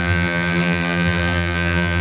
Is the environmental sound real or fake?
fake